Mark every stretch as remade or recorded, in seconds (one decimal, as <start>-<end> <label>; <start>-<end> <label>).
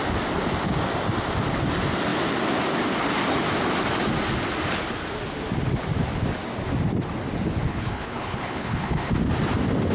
0.0-7.7 recorded; 7.7-9.1 remade; 9.1-9.9 recorded